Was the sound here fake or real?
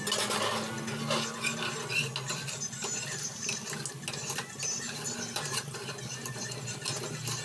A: real